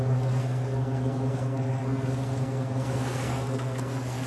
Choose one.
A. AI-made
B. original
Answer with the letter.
A